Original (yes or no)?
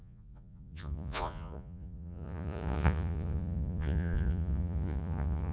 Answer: no